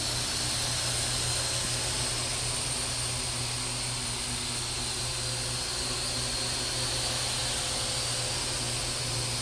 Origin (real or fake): real